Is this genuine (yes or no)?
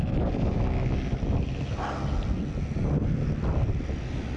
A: yes